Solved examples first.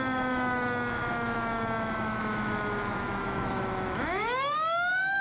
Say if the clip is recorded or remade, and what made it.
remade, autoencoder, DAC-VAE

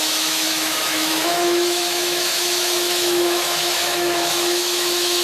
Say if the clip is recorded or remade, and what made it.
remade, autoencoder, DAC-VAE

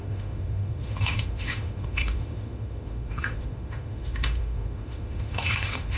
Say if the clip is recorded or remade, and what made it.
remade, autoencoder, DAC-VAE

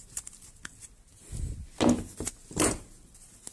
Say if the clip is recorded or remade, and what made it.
recorded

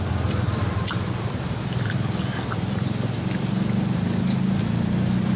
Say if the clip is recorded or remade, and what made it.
recorded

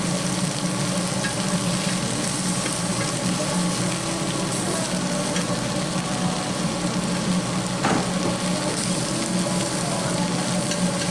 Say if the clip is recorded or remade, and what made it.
recorded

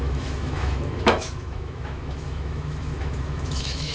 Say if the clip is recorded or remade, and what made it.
remade, autoencoder, DAC-VAE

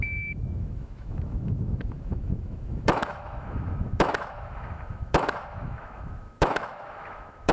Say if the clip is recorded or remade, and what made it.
remade, autoencoder, DAC-VAE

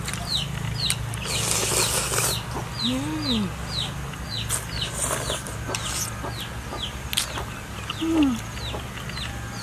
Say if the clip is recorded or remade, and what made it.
recorded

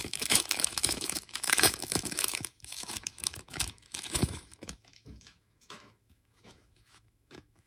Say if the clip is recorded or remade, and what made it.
remade, autoencoder, DAC-VAE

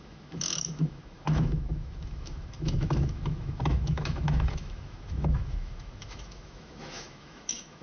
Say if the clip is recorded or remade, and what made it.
remade, autoencoder, DAC-VAE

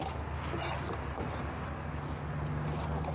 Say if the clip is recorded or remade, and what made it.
recorded